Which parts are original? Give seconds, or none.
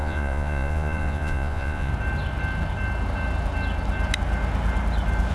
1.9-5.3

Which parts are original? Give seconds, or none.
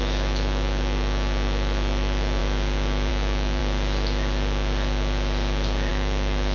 2.4-3.1; 3.6-5.9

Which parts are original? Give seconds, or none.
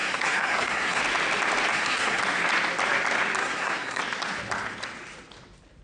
1.0-1.7; 2.2-3.4; 4.0-5.8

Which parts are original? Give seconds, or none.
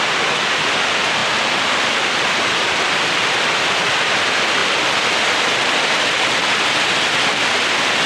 0.0-8.1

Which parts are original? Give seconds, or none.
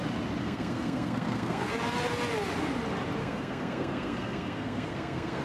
0.0-0.4; 1.7-3.2